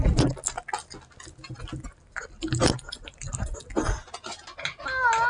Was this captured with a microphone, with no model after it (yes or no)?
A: yes